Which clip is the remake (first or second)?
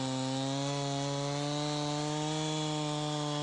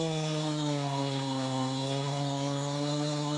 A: second